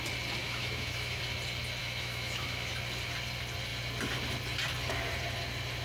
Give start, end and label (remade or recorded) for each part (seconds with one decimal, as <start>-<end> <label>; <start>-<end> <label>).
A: 0.0-0.4 recorded; 0.4-1.2 remade; 1.2-1.8 recorded; 1.8-2.7 remade; 2.7-5.8 recorded